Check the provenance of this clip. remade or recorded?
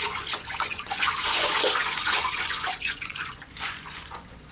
remade